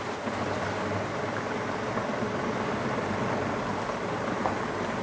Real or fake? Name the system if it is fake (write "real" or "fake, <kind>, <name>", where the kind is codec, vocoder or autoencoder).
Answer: real